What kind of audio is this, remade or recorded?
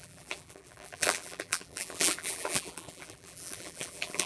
remade